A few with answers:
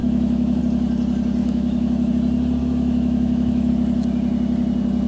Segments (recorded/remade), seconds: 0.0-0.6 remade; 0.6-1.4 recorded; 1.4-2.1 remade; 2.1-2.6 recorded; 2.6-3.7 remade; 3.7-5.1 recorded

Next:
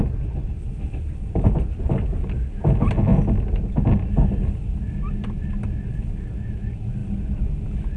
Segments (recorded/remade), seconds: 0.0-8.0 recorded

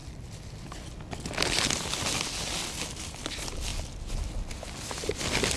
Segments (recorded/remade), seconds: 0.0-5.6 recorded

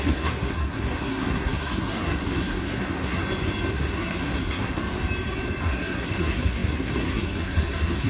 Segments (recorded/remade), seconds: 0.0-3.2 remade; 3.2-3.7 recorded; 3.7-4.8 remade; 4.8-5.6 recorded; 5.6-8.1 remade

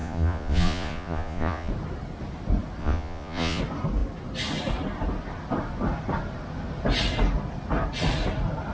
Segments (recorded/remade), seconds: 0.0-1.7 remade; 1.7-2.8 recorded; 2.8-3.6 remade; 3.6-8.7 recorded

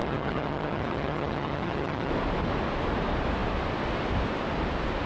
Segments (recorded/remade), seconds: 0.0-2.1 remade; 2.1-5.1 recorded